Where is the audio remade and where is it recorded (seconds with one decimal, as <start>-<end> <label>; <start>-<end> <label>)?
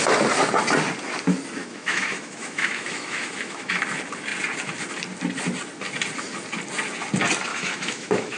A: 0.0-1.6 recorded; 1.6-3.8 remade; 3.8-7.5 recorded; 7.5-8.4 remade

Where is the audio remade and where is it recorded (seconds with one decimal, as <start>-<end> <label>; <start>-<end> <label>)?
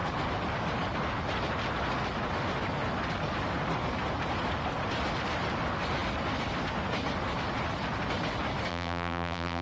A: 0.0-8.7 recorded; 8.7-9.6 remade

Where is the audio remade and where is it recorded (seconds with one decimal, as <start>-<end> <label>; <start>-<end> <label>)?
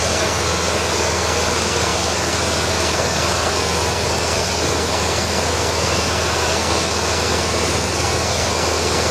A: 0.0-9.1 remade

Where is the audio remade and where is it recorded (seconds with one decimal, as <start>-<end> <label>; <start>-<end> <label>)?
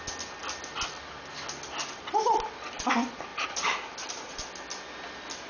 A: 0.0-3.3 recorded; 3.3-4.3 remade; 4.3-5.5 recorded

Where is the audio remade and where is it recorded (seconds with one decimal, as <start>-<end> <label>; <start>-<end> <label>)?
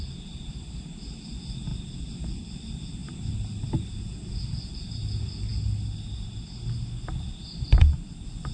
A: 0.0-3.0 remade; 3.0-4.4 recorded; 4.4-5.5 remade; 5.5-8.1 recorded; 8.1-8.5 remade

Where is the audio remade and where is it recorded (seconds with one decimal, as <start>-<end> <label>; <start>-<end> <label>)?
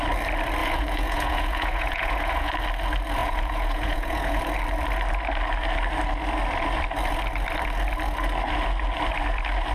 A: 0.0-0.6 recorded; 0.6-2.5 remade; 2.5-3.2 recorded; 3.2-4.4 remade; 4.4-9.7 recorded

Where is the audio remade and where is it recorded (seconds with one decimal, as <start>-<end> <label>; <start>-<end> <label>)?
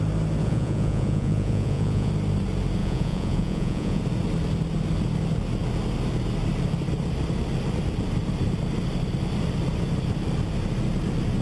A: 0.0-0.4 recorded; 0.4-2.1 remade; 2.1-2.8 recorded; 2.8-4.0 remade; 4.0-11.4 recorded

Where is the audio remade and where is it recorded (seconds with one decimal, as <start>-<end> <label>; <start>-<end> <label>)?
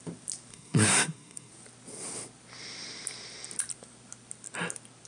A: 0.0-0.5 recorded; 0.5-1.5 remade; 1.5-5.1 recorded